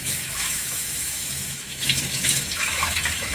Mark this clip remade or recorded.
remade